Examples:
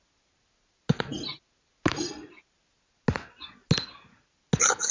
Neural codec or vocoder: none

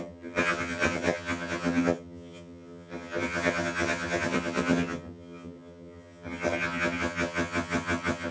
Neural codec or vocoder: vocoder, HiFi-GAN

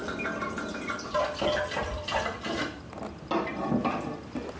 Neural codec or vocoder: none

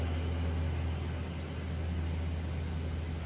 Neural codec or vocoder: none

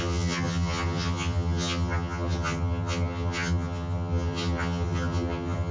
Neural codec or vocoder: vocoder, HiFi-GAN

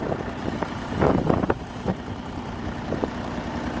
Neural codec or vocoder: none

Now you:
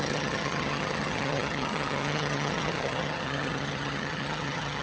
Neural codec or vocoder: vocoder, HiFi-GAN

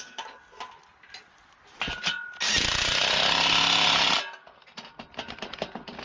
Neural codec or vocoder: none